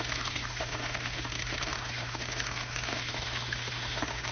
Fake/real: fake